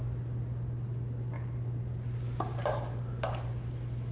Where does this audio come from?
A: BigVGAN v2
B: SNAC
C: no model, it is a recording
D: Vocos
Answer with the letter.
C